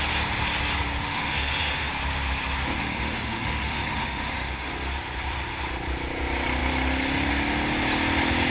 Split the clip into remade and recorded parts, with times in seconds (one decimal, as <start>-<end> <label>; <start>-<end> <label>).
0.0-1.0 recorded; 1.0-1.9 remade; 1.9-2.8 recorded; 2.8-4.7 remade; 4.7-8.5 recorded